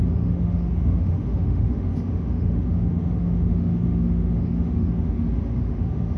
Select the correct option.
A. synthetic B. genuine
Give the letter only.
A